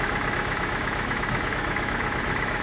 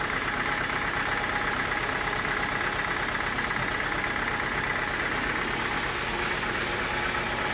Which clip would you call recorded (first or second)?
second